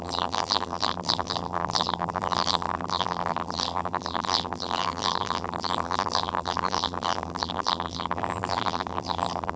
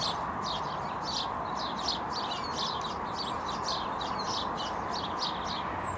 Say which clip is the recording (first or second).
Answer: second